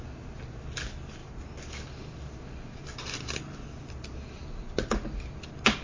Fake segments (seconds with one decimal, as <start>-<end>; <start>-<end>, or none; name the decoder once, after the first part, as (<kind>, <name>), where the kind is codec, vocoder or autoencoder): none